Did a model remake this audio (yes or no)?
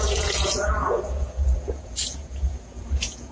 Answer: yes